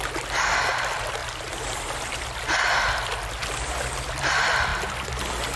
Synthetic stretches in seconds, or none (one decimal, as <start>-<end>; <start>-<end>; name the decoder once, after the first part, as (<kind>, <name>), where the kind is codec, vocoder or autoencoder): none